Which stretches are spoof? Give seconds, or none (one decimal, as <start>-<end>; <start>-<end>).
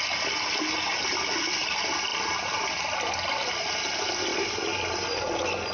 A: none